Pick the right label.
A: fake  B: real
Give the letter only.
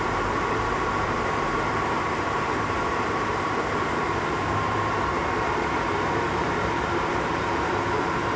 A